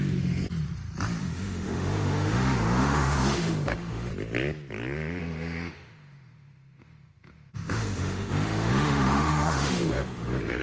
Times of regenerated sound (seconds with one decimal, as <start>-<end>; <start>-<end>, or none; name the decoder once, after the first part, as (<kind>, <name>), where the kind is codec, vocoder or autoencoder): 0.0-0.4 (autoencoder, DAC-VAE); 1.2-4.1; 5.2-10.6